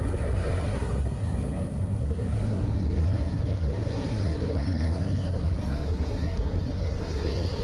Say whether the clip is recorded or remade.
remade